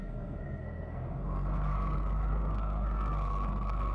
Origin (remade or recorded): remade